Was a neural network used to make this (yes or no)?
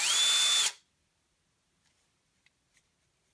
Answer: no